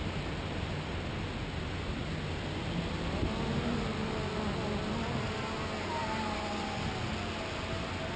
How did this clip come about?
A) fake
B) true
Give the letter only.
B